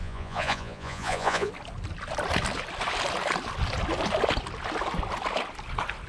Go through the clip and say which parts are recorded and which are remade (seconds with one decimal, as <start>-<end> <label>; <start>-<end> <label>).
0.0-1.5 remade; 1.5-6.1 recorded